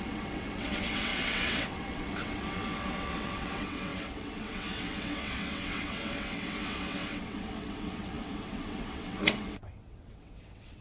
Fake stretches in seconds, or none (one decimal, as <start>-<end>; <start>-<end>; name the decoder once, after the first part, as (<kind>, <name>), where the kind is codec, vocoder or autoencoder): 0.0-10.8 (vocoder, WaveNeXt)